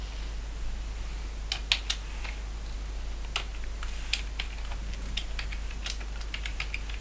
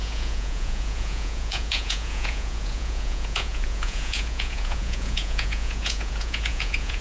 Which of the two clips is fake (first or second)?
second